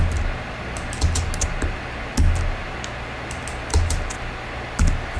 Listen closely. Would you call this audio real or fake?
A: real